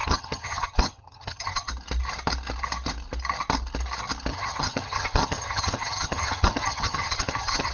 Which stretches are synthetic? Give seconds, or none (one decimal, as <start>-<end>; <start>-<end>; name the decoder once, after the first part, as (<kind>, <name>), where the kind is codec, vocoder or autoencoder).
0.0-1.7 (vocoder, HiFi-GAN); 4.3-7.7